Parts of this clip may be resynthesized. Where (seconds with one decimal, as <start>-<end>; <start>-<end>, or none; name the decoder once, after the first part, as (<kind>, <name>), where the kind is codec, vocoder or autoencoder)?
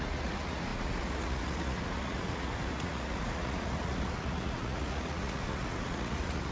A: 0.0-6.5 (vocoder, Vocos)